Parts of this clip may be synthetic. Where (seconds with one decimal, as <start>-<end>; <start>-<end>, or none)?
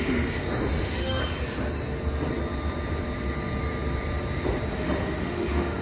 0.0-1.2; 4.7-5.8